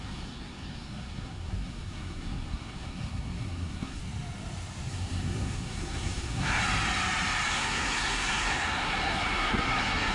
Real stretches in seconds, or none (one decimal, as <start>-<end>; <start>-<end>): 4.0-4.9; 6.6-7.5